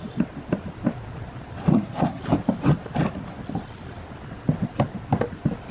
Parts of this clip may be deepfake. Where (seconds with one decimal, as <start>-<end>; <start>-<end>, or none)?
1.7-2.2